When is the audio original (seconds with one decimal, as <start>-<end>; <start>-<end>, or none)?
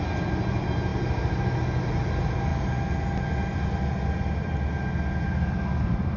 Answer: 0.0-6.2